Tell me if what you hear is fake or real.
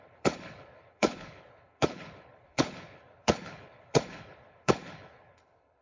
fake